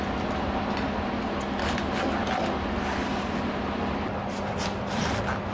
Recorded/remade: recorded